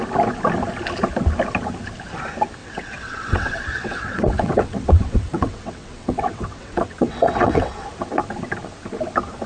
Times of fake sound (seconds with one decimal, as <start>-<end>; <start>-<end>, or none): 2.6-7.9

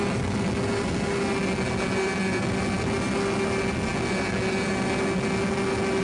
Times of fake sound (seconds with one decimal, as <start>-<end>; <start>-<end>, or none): none